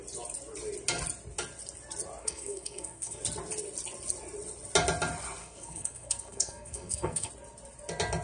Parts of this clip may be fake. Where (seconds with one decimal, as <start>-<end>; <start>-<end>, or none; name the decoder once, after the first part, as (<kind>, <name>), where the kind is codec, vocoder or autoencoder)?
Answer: 2.2-3.2 (codec, SNAC); 5.4-7.3